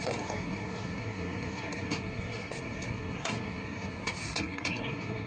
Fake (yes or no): yes